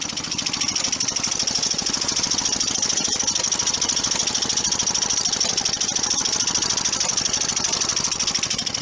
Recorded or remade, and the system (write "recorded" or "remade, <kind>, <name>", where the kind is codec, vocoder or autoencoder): recorded